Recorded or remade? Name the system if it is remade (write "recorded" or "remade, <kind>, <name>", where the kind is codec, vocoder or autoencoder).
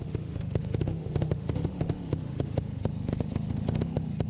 remade, autoencoder, DAC-VAE